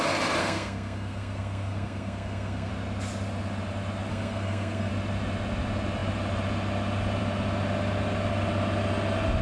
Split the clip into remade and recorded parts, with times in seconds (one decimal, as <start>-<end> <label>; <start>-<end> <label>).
0.0-0.4 recorded; 0.4-2.7 remade; 2.7-4.1 recorded; 4.1-4.9 remade; 4.9-9.4 recorded